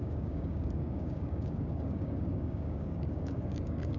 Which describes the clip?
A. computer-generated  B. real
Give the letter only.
A